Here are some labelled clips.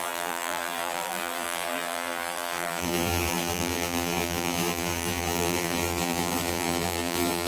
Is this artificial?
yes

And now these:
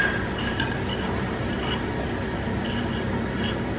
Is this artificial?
no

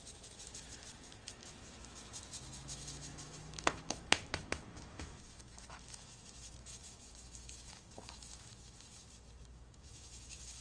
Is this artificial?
yes